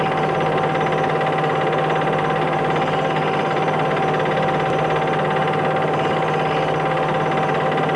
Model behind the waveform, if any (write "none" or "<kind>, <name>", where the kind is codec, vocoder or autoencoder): none